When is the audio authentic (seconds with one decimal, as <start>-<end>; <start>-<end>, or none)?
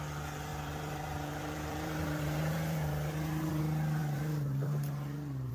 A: 0.0-0.5; 3.6-4.0